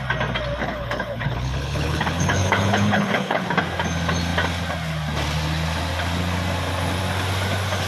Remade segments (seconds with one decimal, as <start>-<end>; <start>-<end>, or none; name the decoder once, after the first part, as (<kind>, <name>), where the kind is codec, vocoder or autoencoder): 0.6-3.4 (codec, HILCodec)